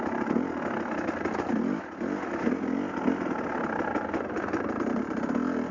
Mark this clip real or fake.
real